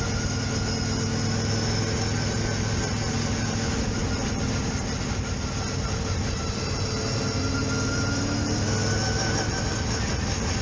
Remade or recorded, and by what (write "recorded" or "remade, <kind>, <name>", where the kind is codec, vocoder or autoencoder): recorded